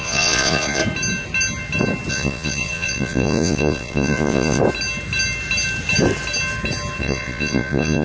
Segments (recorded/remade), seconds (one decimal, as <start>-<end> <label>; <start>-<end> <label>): 0.0-0.8 remade; 0.8-2.1 recorded; 2.1-4.6 remade; 4.6-7.0 recorded; 7.0-8.0 remade